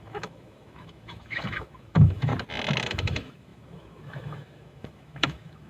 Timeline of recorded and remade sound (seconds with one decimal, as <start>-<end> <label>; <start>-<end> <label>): 0.0-2.3 remade; 2.3-2.8 recorded; 2.8-5.7 remade